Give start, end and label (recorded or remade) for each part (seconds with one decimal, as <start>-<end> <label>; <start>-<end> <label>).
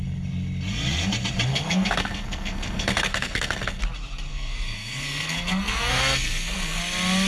0.0-1.5 recorded; 1.5-3.8 remade; 3.8-4.3 recorded; 4.3-6.8 remade; 6.8-7.3 recorded